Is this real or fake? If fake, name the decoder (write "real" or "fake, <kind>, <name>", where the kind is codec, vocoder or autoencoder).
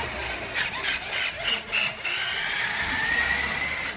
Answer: real